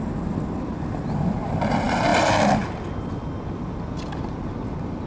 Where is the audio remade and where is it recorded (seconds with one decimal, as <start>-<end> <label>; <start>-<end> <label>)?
0.0-5.1 recorded